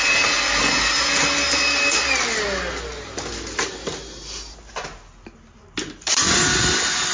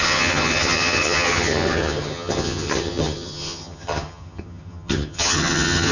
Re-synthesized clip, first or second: second